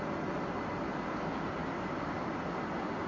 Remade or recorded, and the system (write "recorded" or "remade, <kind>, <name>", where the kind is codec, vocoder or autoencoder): recorded